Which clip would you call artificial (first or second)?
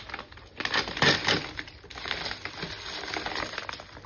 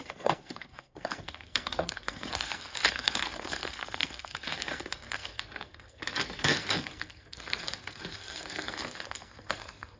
second